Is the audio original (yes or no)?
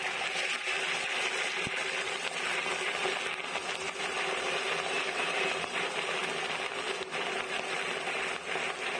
yes